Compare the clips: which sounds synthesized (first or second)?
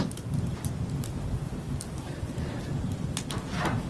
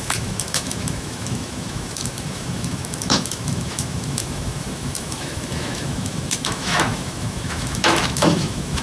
second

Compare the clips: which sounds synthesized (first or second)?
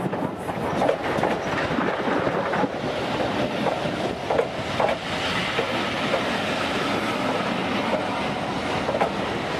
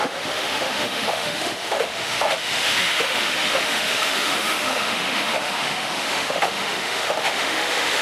second